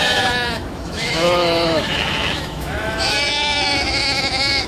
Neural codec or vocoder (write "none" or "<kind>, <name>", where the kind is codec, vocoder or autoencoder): autoencoder, DAC-VAE